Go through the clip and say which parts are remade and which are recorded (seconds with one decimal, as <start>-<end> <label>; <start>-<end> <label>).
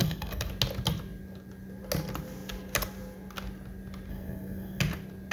0.0-0.5 remade; 0.5-4.1 recorded; 4.1-4.8 remade; 4.8-5.3 recorded